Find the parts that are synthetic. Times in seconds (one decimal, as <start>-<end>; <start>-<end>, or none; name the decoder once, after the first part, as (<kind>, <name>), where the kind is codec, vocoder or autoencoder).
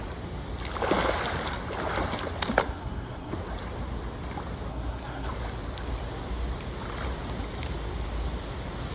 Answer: 2.6-3.3 (codec, SNAC); 4.7-5.3